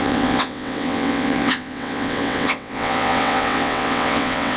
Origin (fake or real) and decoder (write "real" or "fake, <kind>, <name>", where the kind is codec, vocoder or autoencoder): fake, vocoder, WaveNeXt